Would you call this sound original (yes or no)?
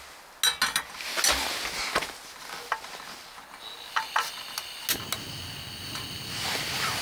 yes